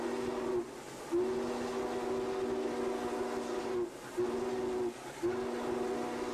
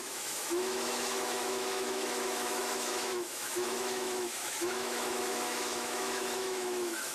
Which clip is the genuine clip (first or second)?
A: first